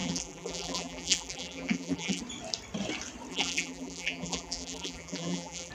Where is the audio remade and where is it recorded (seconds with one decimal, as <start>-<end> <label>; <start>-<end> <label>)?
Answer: 0.0-2.2 remade; 2.2-3.3 recorded; 3.3-5.7 remade